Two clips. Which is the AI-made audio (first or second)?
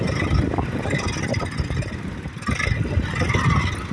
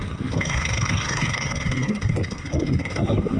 second